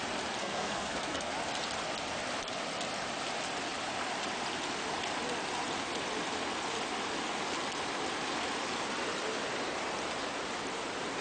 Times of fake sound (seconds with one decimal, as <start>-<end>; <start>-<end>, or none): 0.4-1.3